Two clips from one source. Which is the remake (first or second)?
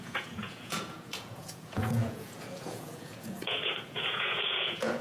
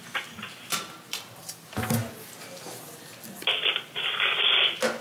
first